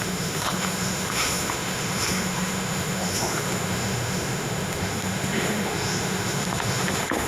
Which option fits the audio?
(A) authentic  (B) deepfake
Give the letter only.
B